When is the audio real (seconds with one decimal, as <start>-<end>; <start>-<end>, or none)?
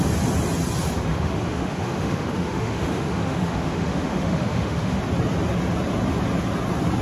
0.0-1.1; 5.0-7.0